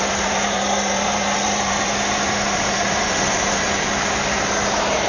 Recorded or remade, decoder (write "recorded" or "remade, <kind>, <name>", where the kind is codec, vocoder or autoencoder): remade, vocoder, BigVGAN v2